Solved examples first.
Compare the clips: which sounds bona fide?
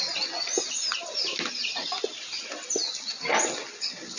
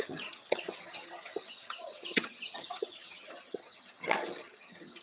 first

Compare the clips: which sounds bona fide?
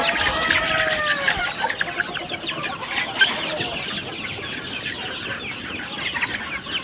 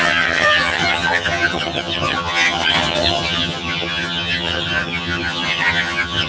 first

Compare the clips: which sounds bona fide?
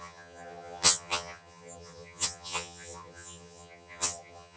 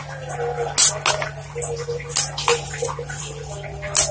second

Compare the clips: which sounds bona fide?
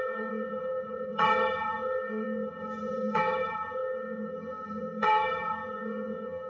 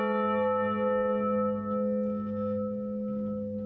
second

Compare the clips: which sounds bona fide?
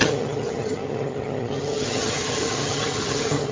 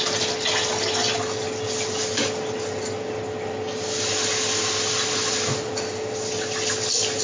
second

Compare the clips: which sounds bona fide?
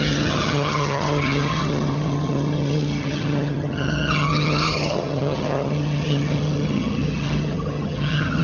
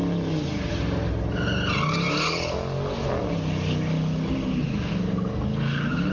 second